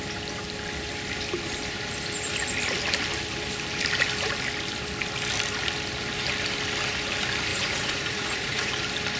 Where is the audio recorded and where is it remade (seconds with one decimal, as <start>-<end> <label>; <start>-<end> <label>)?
0.0-7.5 recorded; 7.5-8.7 remade; 8.7-9.2 recorded